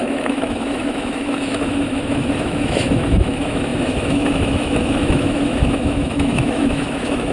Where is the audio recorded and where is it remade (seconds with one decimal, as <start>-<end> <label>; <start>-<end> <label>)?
0.0-7.3 remade